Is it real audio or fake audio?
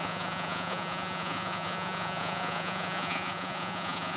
fake